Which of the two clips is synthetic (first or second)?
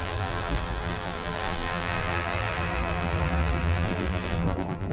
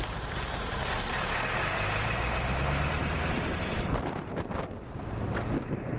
first